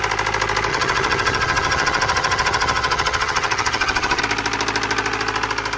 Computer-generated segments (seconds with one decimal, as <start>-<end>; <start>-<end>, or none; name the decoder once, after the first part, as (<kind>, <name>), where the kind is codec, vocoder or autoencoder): 0.7-4.2 (vocoder, HiFi-GAN)